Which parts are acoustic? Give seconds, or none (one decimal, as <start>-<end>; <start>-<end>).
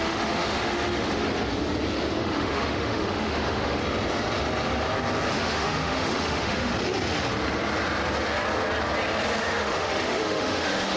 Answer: 1.3-2.2; 3.8-5.3; 6.7-9.4